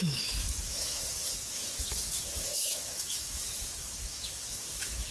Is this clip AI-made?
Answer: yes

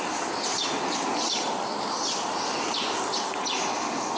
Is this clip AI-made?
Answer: no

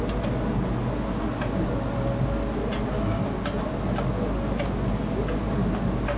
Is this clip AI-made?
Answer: no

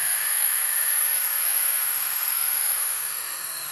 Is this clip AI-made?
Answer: yes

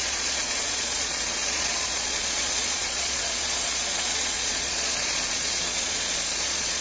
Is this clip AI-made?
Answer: yes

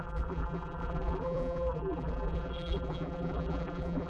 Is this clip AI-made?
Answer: yes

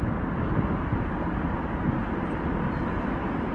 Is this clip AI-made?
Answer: no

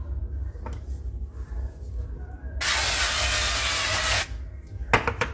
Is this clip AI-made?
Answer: no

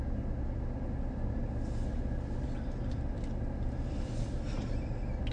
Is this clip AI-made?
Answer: no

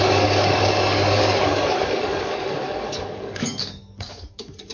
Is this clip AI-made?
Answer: yes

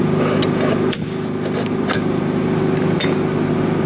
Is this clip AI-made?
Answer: no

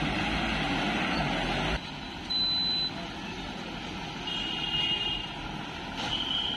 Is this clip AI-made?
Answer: no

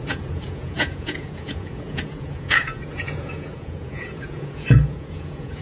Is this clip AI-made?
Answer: yes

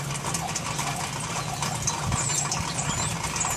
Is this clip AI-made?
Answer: no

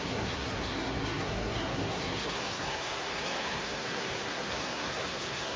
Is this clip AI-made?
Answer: yes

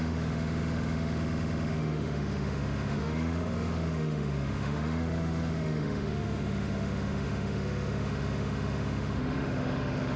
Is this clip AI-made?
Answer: yes